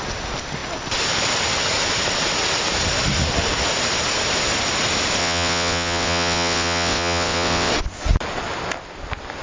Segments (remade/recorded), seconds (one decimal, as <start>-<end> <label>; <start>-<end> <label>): 0.0-5.2 recorded; 5.2-7.7 remade; 7.7-9.4 recorded